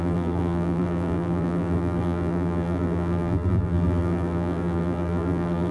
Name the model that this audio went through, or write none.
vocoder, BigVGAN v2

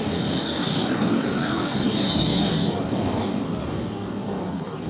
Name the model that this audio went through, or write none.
codec, DAC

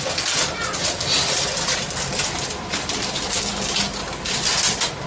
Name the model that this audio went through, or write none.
none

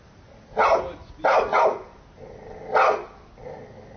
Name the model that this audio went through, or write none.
none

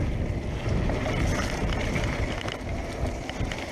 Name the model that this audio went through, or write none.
none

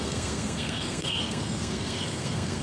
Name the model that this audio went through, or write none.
codec, SNAC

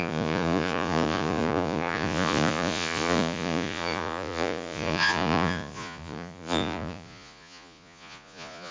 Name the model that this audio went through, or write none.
vocoder, Vocos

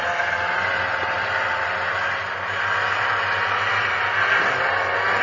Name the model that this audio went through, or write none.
none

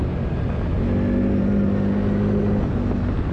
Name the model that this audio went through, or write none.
none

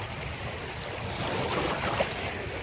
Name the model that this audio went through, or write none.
none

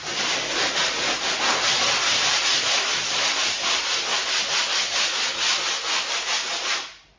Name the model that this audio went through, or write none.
none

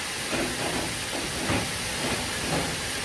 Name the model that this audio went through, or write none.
none